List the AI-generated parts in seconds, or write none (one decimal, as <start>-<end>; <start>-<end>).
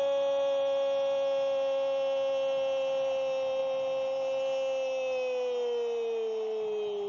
none